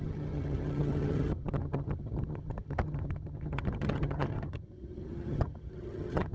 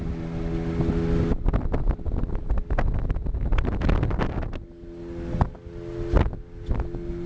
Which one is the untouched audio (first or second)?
second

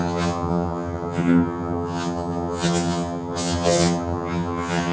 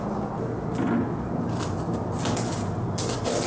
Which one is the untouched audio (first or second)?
second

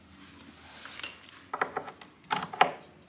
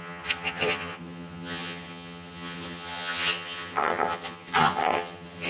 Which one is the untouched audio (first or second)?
first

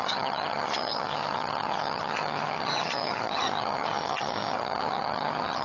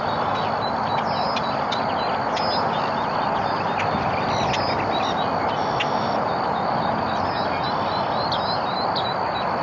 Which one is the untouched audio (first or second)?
second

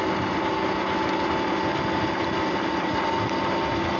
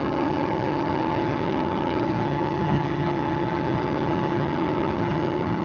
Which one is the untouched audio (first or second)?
first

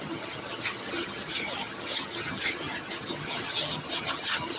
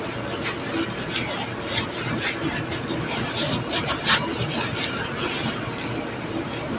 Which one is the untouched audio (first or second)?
second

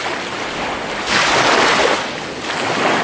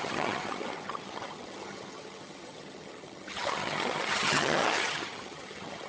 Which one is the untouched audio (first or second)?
first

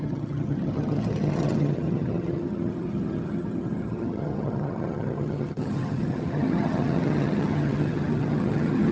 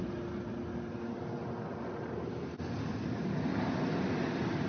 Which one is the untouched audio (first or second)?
second